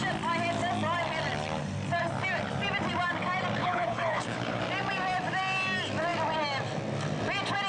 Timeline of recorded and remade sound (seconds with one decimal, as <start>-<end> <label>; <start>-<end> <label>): 0.0-3.6 recorded; 3.6-4.6 remade; 4.6-7.7 recorded